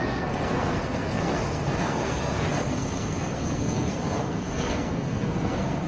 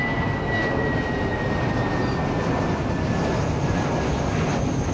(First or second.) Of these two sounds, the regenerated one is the first